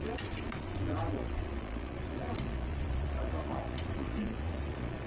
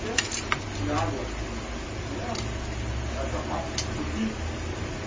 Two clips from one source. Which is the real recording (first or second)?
second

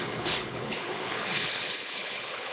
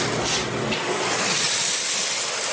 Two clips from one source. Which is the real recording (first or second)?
second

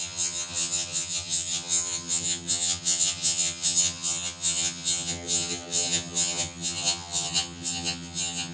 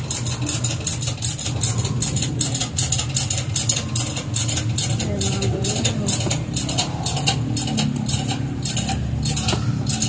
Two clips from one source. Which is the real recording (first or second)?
second